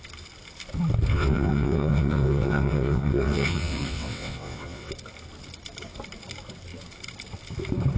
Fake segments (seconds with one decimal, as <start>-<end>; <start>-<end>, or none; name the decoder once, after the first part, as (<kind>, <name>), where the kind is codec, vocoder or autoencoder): 1.1-4.9 (vocoder, WaveNeXt)